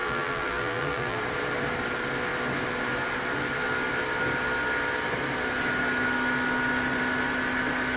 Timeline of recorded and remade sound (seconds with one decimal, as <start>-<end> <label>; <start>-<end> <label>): 0.0-1.2 remade; 1.2-8.0 recorded